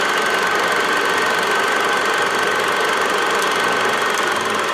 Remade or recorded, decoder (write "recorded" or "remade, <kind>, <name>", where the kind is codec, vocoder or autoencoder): recorded